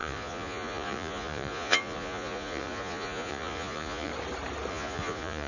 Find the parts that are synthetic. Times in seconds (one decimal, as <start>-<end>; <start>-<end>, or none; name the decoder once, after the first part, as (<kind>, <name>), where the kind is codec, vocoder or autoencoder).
0.0-4.1 (vocoder, Vocos); 4.7-5.5